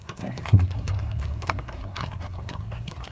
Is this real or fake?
fake